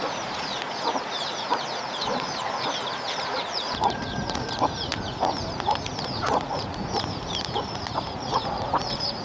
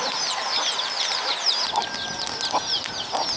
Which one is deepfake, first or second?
first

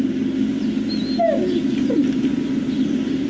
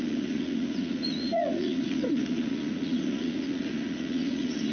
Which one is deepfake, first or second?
second